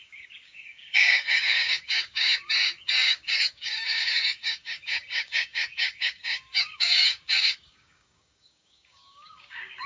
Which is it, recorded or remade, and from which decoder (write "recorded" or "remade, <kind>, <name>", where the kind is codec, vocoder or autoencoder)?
remade, codec, DAC